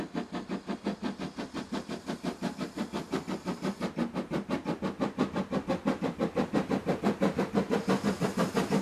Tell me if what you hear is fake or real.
real